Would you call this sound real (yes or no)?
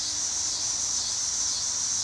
yes